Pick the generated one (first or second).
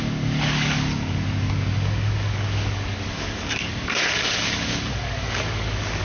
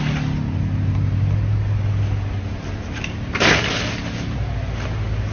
first